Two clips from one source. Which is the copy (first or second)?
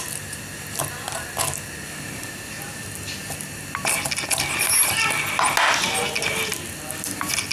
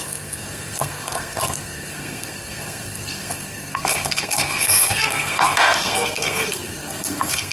second